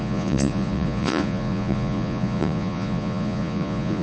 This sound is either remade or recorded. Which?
remade